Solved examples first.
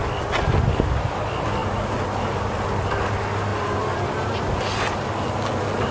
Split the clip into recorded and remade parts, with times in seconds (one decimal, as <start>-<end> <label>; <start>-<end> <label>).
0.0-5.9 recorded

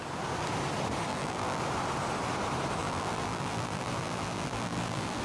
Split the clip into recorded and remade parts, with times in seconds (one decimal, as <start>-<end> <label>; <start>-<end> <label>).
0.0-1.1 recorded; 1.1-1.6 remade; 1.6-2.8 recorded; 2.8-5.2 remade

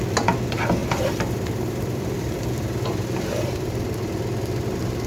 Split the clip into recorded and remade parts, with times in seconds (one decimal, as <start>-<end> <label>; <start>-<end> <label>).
0.0-0.8 recorded; 0.8-3.9 remade; 3.9-5.1 recorded

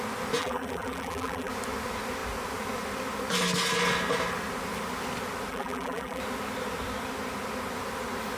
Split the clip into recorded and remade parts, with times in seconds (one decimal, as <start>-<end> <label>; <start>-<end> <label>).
0.0-0.4 recorded; 0.4-1.5 remade; 1.5-5.5 recorded; 5.5-6.2 remade; 6.2-8.4 recorded

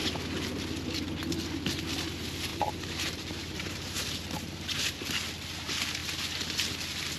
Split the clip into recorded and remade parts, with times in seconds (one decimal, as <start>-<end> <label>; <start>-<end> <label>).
0.0-2.5 recorded; 2.5-5.0 remade; 5.0-7.2 recorded

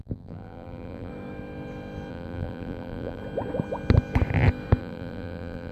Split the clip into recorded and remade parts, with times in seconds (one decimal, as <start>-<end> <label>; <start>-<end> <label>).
0.0-1.1 remade; 1.1-2.1 recorded; 2.1-3.2 remade; 3.2-4.8 recorded; 4.8-5.7 remade

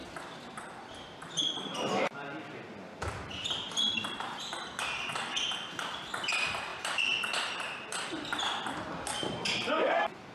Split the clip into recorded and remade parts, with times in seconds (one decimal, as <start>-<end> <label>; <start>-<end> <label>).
0.0-4.4 remade; 4.4-6.7 recorded; 6.7-9.7 remade; 9.7-10.3 recorded